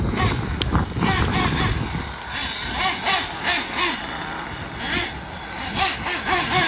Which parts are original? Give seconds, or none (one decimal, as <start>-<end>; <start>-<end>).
0.0-6.7

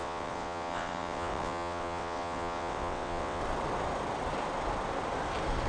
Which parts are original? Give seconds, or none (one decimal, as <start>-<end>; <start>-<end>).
3.4-5.7

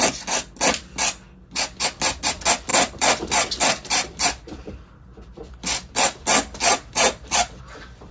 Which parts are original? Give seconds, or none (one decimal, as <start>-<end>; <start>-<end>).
0.0-2.7; 7.6-8.1

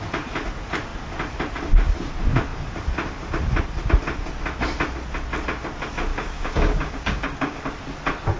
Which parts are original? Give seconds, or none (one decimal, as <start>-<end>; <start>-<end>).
0.0-6.1; 7.6-8.4

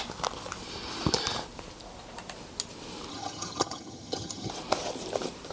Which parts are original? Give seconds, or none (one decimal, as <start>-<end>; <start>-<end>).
0.0-3.1; 4.5-5.5